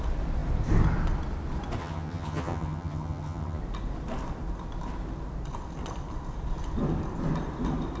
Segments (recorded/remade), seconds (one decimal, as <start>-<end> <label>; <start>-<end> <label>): 0.0-1.8 recorded; 1.8-3.6 remade; 3.6-8.0 recorded

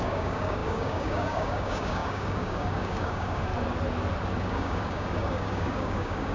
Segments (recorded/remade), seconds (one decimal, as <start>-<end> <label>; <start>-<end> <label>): 0.0-3.5 remade; 3.5-4.4 recorded; 4.4-6.3 remade

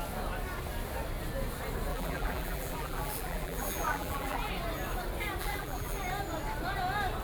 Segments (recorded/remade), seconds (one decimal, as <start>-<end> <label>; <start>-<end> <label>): 0.0-1.9 recorded; 1.9-4.5 remade; 4.5-5.4 recorded; 5.4-6.0 remade; 6.0-7.2 recorded

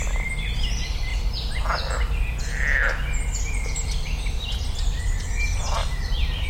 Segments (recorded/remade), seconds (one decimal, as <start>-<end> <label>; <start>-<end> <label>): 0.0-6.5 recorded